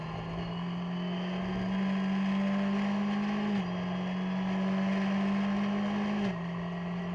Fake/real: real